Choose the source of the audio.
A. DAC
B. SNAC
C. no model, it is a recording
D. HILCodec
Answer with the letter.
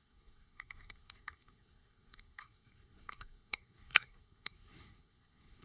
B